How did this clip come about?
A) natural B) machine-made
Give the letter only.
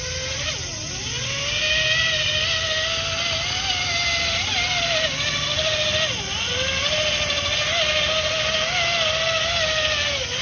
A